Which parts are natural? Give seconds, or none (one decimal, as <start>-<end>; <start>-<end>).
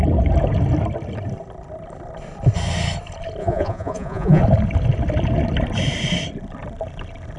0.0-3.4; 4.4-7.4